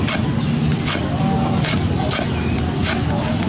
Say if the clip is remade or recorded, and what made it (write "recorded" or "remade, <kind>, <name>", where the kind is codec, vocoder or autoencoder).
recorded